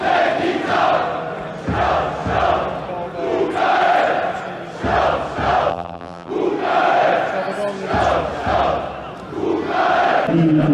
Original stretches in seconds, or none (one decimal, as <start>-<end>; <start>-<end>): 0.0-5.7; 6.3-10.7